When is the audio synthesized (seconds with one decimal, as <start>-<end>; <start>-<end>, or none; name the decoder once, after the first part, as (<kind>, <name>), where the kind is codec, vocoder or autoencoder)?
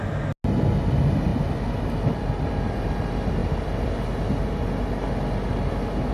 none